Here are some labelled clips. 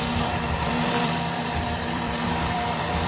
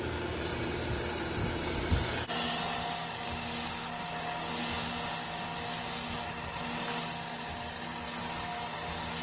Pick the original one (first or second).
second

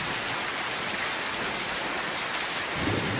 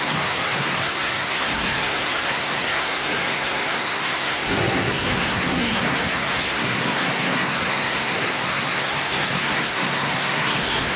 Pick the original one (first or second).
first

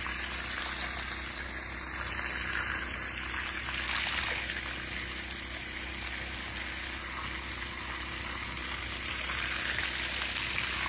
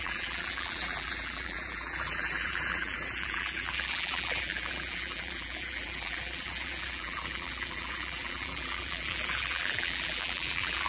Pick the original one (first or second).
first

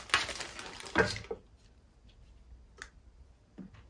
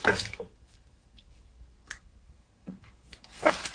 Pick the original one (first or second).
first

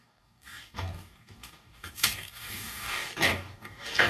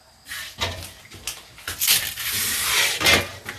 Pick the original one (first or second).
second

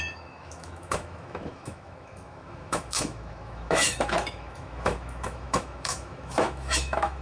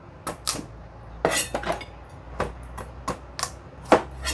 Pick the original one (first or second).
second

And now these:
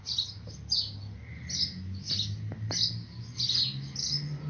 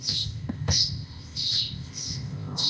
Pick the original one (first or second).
first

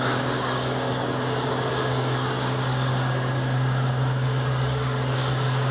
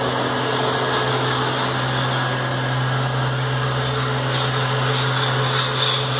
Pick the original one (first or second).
second